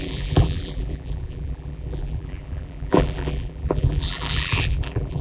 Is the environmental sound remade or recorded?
remade